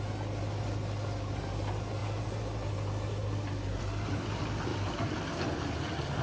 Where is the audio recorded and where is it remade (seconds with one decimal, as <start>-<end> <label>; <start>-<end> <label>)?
0.0-6.2 recorded